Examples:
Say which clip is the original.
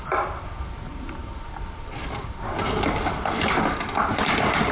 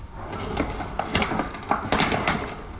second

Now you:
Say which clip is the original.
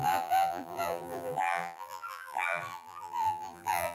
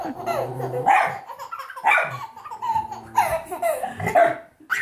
second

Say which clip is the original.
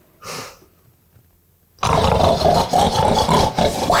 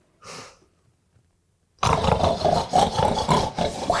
first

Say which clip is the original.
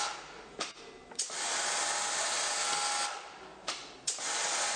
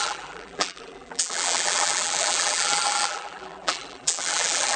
first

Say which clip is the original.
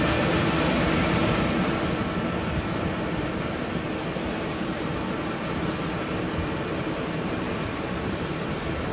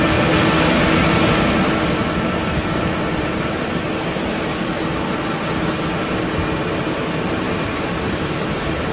second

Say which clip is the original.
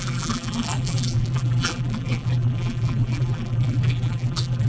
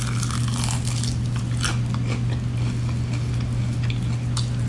second